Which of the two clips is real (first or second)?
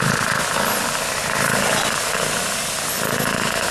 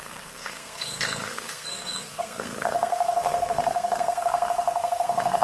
first